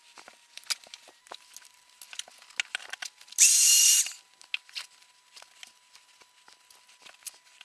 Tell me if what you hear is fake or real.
real